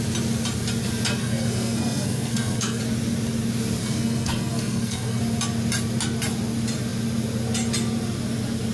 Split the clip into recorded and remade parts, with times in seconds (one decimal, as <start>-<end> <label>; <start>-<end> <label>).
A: 0.0-1.2 recorded; 1.2-2.8 remade; 2.8-3.8 recorded; 3.8-5.2 remade; 5.2-8.7 recorded